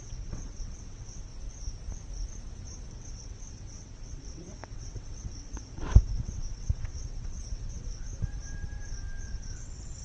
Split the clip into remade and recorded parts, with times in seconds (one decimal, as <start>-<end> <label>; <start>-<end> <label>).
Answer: 0.0-1.3 remade; 1.3-2.9 recorded; 2.9-8.1 remade; 8.1-9.2 recorded; 9.2-10.0 remade